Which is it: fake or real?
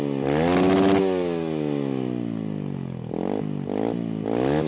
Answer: real